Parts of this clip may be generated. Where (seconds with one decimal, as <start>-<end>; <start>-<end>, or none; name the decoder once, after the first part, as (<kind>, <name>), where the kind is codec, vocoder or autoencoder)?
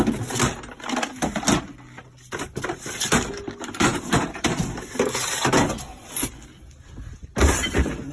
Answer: none